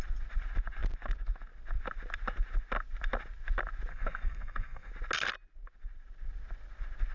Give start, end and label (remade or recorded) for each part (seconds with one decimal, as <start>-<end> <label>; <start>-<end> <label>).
0.0-3.9 recorded; 3.9-4.9 remade; 4.9-7.1 recorded